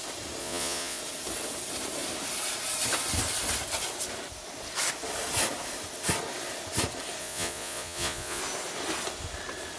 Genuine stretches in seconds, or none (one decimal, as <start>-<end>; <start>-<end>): 0.0-0.4; 1.0-7.2; 8.4-9.8